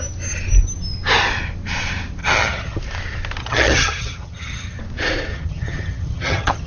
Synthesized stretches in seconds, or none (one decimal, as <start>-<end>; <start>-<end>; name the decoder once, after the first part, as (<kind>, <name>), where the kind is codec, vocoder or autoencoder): 2.2-2.8 (vocoder, HiFi-GAN); 3.4-4.8; 5.3-6.7